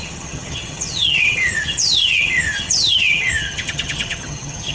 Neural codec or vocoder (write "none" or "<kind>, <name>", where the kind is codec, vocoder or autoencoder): vocoder, HiFi-GAN